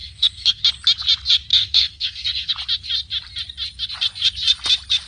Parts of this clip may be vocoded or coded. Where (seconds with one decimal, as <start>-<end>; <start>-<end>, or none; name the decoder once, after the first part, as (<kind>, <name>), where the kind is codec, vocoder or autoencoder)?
0.0-0.6 (codec, SNAC); 1.5-2.5